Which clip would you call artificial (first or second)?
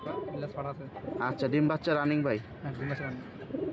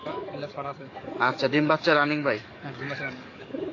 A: second